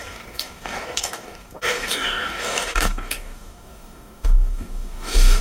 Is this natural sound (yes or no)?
no